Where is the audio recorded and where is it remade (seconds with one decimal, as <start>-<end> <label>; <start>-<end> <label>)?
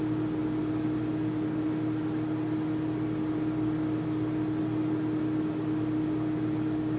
0.0-7.0 recorded